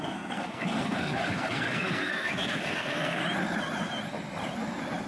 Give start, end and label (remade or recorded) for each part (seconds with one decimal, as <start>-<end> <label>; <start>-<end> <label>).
0.0-3.2 remade; 3.2-5.1 recorded